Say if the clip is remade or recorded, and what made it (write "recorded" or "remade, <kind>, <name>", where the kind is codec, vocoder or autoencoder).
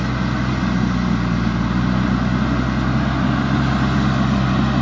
recorded